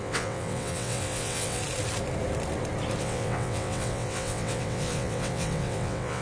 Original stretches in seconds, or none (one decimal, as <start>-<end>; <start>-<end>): 1.6-3.0